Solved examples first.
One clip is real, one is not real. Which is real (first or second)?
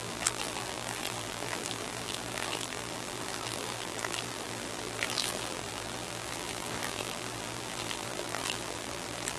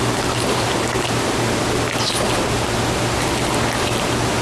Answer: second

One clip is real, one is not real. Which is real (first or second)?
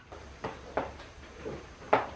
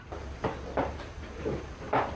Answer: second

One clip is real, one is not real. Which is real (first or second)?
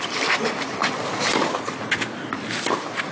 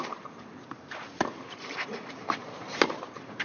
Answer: first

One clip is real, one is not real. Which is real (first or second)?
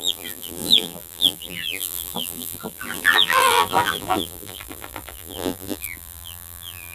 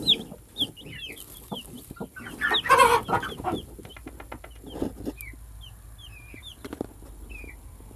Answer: second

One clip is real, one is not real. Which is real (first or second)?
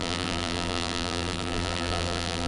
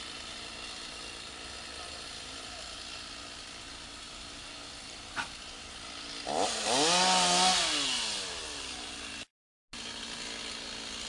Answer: second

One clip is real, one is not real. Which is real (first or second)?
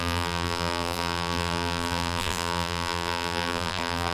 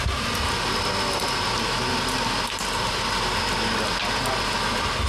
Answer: second